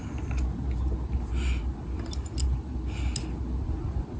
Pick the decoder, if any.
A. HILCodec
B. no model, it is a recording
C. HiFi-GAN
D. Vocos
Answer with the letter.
B